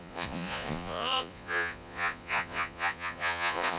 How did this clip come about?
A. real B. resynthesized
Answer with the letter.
B